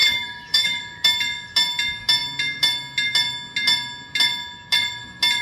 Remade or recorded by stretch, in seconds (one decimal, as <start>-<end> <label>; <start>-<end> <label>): 0.0-0.8 remade; 0.8-5.4 recorded